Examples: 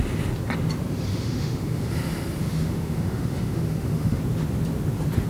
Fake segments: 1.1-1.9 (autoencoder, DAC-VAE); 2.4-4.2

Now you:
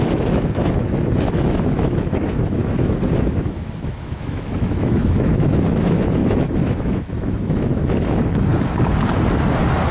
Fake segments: 0.0-8.5 (autoencoder, DAC-VAE)

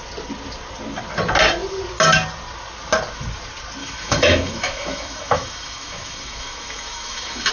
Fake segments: 3.8-7.5 (autoencoder, DAC-VAE)

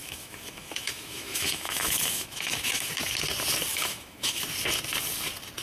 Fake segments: 0.0-2.9 (autoencoder, DAC-VAE); 3.7-4.4